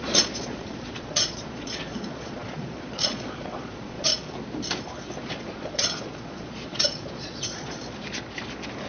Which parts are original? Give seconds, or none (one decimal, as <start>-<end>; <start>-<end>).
4.1-5.2; 7.8-8.9